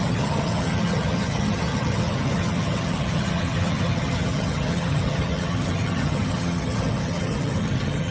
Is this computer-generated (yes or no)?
yes